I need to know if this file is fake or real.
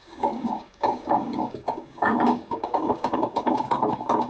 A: fake